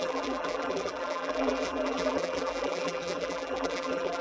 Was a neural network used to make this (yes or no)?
yes